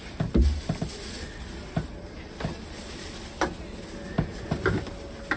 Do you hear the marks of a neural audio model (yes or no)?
no